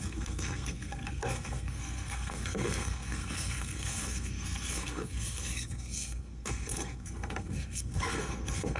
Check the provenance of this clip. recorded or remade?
remade